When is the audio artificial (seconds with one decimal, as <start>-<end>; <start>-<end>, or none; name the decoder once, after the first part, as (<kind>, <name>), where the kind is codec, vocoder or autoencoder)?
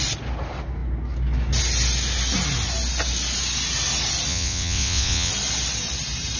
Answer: 4.3-5.3 (vocoder, WaveNeXt)